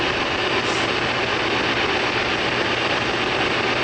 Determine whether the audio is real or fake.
real